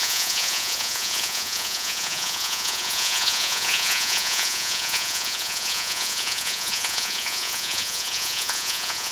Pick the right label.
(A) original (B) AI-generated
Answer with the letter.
B